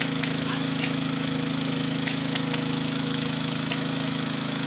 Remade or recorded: remade